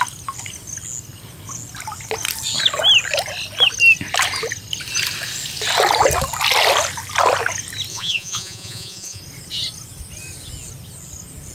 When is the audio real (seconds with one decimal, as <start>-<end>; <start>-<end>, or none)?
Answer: 0.0-7.9; 9.2-11.5